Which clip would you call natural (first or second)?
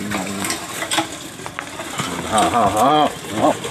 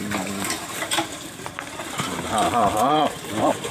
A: first